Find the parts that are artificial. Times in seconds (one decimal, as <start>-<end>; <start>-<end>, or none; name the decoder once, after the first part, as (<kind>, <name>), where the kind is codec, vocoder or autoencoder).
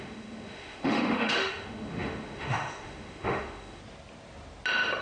0.0-3.8 (autoencoder, DAC-VAE)